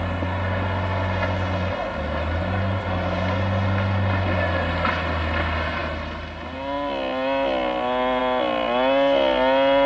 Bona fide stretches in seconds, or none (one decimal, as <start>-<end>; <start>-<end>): 0.0-9.9